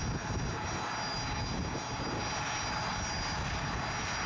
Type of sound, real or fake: real